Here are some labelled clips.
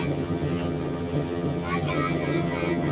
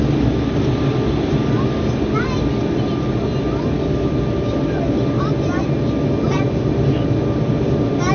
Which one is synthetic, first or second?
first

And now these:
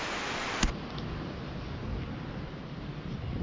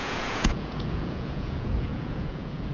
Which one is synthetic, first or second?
second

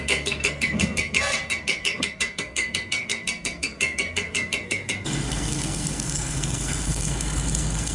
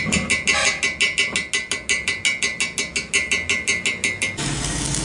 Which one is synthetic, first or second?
first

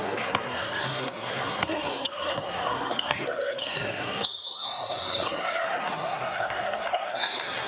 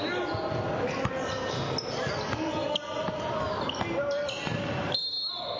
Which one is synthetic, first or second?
first